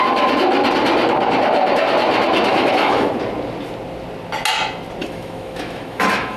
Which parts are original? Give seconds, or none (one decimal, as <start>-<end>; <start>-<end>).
0.0-2.5; 3.1-5.0